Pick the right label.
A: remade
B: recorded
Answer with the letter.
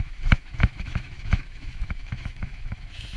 A